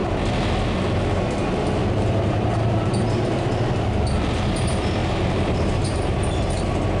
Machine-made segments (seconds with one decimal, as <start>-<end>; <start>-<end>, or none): 1.8-3.5; 5.0-6.6